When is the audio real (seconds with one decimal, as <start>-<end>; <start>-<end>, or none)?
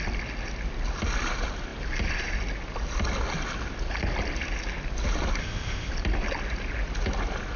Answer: 0.0-5.4; 5.9-7.6